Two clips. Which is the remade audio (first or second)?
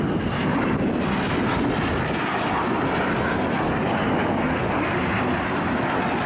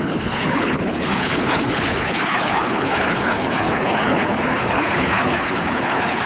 second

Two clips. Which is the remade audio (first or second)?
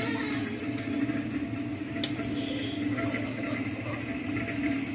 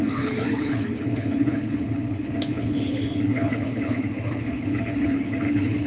second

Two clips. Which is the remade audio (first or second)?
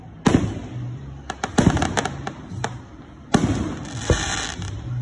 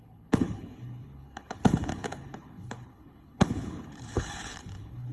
second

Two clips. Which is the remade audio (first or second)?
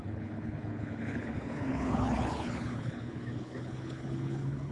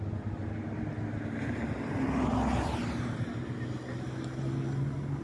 first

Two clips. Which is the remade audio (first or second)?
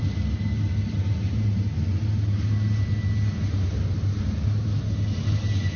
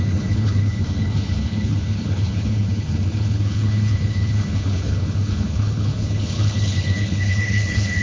second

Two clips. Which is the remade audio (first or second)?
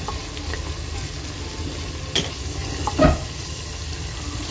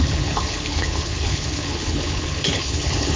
second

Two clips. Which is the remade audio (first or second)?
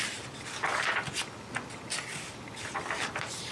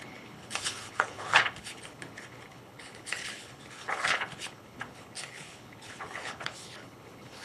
second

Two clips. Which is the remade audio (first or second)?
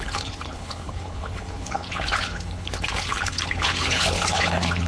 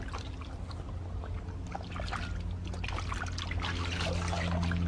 first